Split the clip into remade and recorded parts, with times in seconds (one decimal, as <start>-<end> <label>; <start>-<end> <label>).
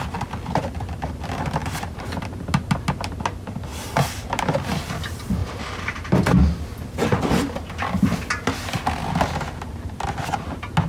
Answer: 0.0-1.6 recorded; 1.6-2.2 remade; 2.2-3.7 recorded; 3.7-5.0 remade; 5.0-5.4 recorded; 5.4-5.9 remade; 5.9-10.9 recorded